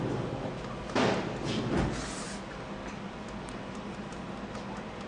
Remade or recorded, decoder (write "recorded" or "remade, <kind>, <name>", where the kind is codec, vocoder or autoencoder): recorded